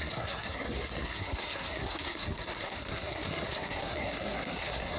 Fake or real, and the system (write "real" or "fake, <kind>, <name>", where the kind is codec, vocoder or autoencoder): fake, codec, SNAC